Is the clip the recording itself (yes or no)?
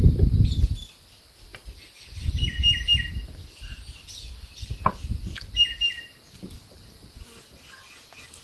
yes